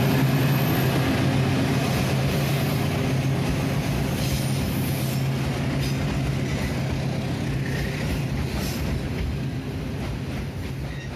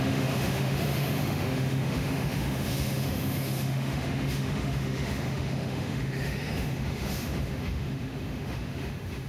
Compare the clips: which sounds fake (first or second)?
second